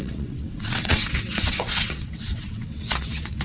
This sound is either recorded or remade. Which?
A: remade